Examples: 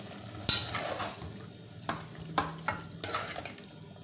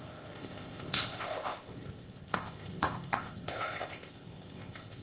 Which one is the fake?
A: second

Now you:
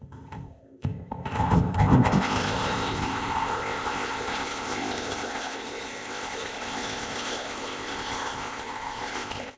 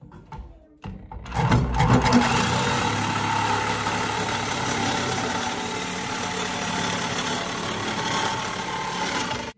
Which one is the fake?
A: first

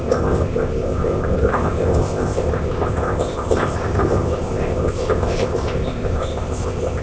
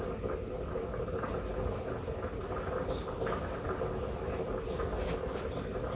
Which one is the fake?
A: first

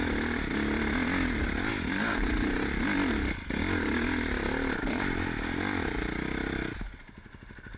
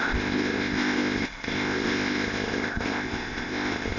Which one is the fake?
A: second